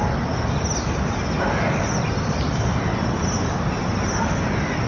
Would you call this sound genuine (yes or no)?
yes